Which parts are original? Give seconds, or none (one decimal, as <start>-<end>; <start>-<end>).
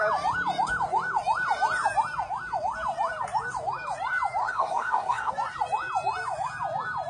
0.0-4.4; 5.3-7.1